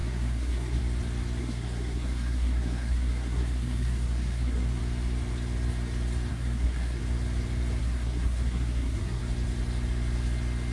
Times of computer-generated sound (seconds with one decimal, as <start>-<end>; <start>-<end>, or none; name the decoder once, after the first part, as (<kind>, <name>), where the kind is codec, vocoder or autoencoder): 0.0-0.8 (codec, SNAC); 1.4-4.8; 6.3-7.0; 7.8-9.2

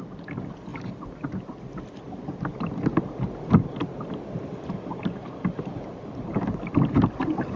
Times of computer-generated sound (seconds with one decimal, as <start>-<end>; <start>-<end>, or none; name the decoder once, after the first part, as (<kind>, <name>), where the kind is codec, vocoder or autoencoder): none